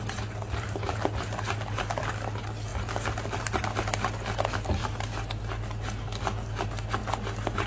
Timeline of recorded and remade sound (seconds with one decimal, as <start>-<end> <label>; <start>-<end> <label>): 0.0-7.7 recorded